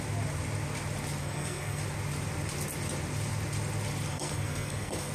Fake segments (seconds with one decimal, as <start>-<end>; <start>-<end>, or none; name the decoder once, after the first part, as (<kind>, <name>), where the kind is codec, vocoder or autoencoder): 1.2-1.8 (codec, SNAC); 4.1-5.1